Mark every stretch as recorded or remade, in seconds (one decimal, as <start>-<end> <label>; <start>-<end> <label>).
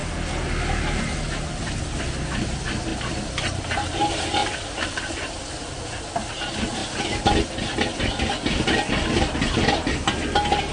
0.0-4.4 recorded; 4.4-5.1 remade; 5.1-10.7 recorded